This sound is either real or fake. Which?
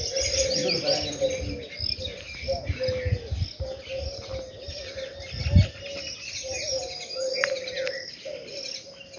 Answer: real